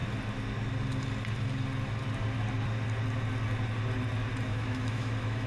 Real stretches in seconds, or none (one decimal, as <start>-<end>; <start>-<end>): 0.0-4.5